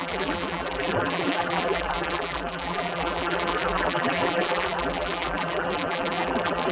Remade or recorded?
remade